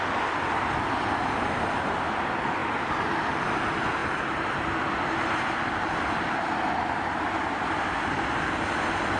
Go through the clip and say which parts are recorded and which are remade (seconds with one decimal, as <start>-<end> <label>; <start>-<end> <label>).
0.0-9.2 recorded